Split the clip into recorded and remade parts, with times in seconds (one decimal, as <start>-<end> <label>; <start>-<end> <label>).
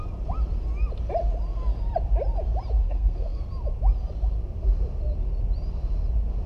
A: 0.0-2.8 recorded; 2.8-3.4 remade; 3.4-6.5 recorded